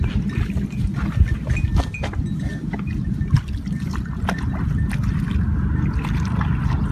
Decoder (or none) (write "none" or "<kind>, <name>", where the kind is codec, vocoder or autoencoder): none